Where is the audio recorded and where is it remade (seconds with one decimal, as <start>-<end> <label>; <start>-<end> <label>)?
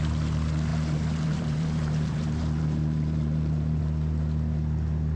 0.0-0.7 recorded; 0.7-3.8 remade; 3.8-5.2 recorded